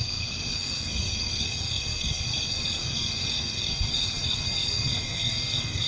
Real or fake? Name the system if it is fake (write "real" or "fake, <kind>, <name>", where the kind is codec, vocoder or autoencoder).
fake, codec, SNAC